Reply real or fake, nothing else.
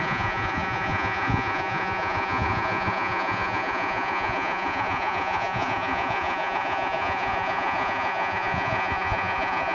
fake